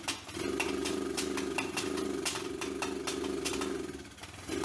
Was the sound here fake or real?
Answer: real